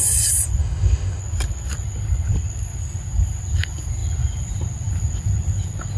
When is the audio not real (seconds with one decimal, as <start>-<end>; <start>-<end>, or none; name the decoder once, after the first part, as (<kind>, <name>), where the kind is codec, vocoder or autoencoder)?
0.6-1.2 (autoencoder, DAC-VAE)